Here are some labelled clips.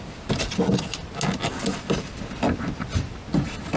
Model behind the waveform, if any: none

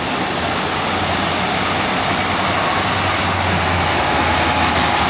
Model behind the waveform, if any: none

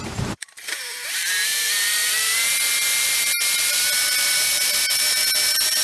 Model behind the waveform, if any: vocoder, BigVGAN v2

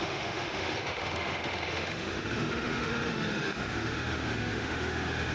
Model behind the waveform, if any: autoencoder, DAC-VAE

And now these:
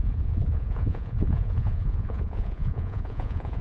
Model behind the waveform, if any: vocoder, Vocos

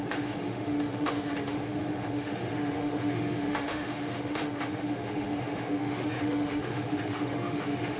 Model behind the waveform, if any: autoencoder, DAC-VAE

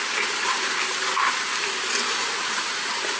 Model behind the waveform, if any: none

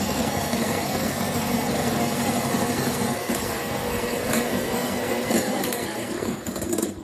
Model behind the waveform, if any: codec, SNAC